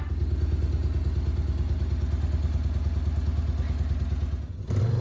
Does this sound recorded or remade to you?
recorded